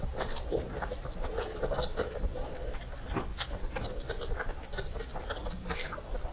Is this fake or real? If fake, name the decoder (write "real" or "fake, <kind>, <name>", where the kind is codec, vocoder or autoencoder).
fake, vocoder, BigVGAN v2